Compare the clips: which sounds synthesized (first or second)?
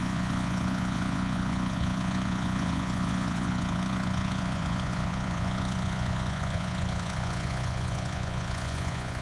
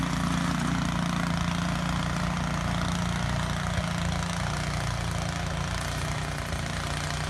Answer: first